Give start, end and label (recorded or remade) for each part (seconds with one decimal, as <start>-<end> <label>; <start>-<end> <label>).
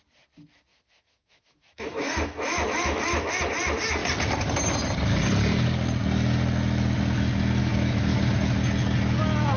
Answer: 0.0-0.7 recorded; 0.7-3.3 remade; 3.3-7.6 recorded; 7.6-8.2 remade; 8.2-9.6 recorded